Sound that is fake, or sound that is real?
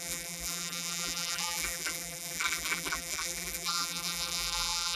fake